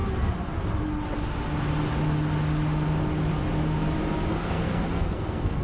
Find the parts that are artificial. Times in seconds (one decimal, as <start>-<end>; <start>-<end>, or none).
4.3-5.6

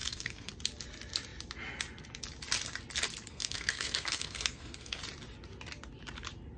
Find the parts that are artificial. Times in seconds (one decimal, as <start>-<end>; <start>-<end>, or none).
0.0-0.5; 3.3-5.0